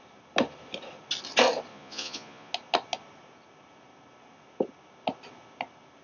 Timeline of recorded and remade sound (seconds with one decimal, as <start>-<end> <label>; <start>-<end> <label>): 0.0-1.7 recorded; 1.7-2.5 remade; 2.5-6.0 recorded